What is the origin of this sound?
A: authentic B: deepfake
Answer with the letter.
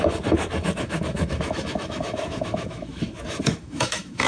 B